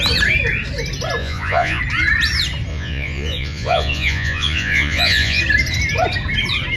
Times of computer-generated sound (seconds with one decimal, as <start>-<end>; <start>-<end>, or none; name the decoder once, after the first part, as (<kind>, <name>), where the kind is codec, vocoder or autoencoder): 1.2-1.8 (vocoder, Vocos); 2.7-5.4